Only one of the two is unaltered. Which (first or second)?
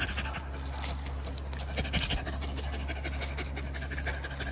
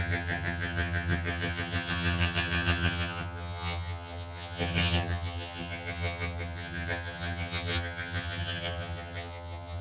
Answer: first